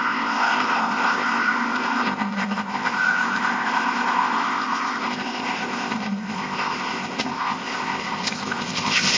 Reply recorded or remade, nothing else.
remade